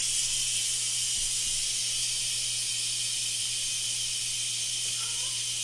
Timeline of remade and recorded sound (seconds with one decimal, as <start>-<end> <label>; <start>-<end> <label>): 0.0-5.6 recorded